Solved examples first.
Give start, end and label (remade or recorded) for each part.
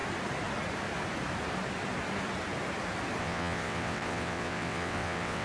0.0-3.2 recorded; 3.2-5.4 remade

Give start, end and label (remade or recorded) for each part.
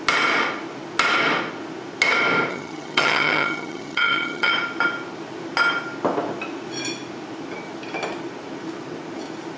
0.0-2.5 recorded; 2.5-4.5 remade; 4.5-9.6 recorded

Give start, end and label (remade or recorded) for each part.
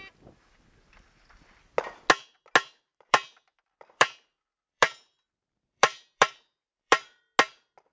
0.0-2.9 recorded; 2.9-7.2 remade; 7.2-7.9 recorded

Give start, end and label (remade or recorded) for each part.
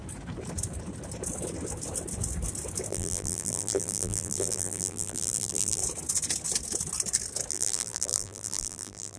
0.0-2.9 recorded; 2.9-5.8 remade; 5.8-7.5 recorded; 7.5-9.2 remade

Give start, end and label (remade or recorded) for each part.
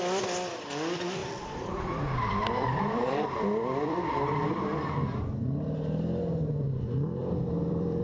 0.0-1.2 recorded; 1.2-4.5 remade; 4.5-7.2 recorded; 7.2-8.0 remade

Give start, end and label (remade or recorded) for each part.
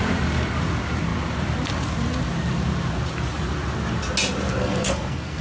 0.0-4.5 recorded; 4.5-5.4 remade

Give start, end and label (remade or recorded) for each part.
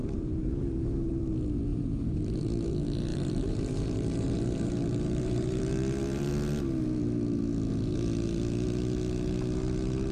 0.0-1.2 remade; 1.2-1.7 recorded; 1.7-2.2 remade; 2.2-3.1 recorded; 3.1-6.3 remade; 6.3-10.1 recorded